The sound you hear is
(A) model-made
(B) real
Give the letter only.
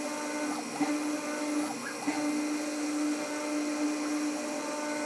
B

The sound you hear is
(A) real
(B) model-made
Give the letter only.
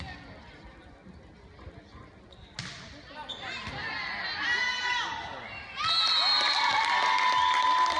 A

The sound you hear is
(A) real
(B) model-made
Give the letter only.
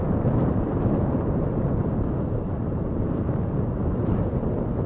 A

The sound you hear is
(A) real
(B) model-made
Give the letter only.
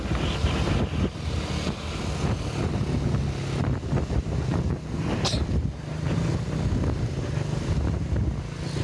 A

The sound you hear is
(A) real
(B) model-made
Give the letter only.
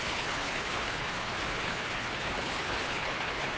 B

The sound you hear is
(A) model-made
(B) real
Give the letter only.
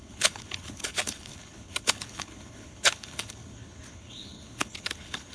A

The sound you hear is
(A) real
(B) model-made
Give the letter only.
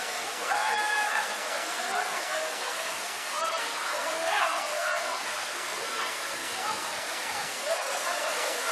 B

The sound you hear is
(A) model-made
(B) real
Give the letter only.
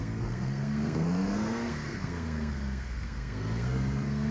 A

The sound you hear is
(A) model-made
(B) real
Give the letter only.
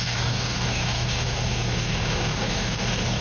A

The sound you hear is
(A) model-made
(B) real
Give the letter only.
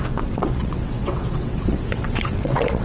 A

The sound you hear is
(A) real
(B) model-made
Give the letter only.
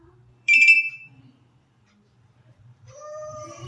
B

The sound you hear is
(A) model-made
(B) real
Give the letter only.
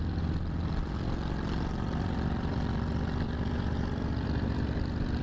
A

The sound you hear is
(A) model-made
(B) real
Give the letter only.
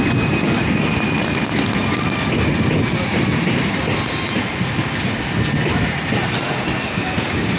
B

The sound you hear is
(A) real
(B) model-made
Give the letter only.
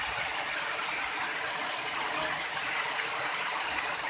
A